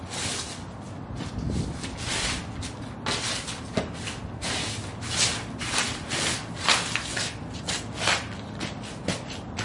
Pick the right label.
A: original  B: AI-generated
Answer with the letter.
A